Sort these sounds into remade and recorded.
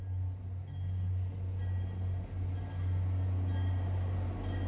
recorded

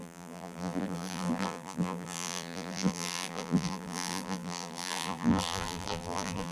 remade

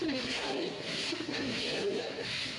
remade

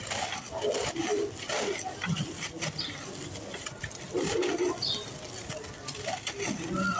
recorded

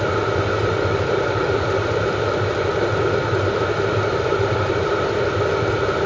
remade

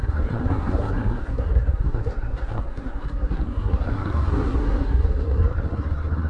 remade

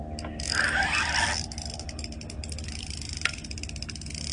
recorded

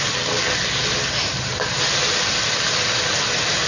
recorded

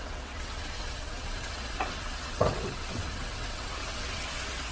remade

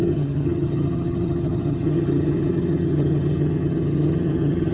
remade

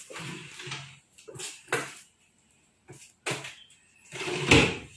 recorded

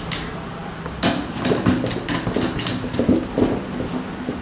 recorded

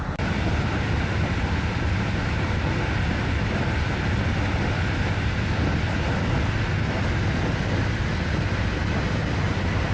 recorded